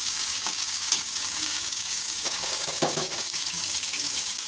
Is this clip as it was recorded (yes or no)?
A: no